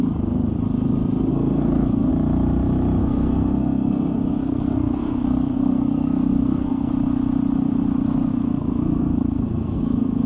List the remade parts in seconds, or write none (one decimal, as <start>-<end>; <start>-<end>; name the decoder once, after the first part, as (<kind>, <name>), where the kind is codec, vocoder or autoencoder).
1.3-2.1 (codec, SNAC); 3.0-6.9; 8.3-10.3

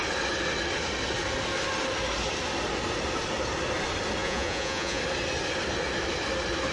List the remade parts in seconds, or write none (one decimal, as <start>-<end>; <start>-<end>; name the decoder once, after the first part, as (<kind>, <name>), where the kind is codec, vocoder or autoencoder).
4.2-5.0 (vocoder, Vocos)